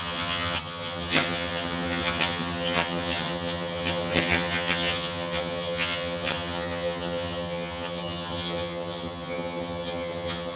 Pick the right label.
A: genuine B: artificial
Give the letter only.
B